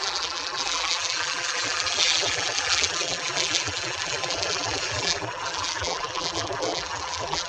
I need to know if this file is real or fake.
fake